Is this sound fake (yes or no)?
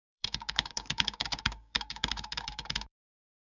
yes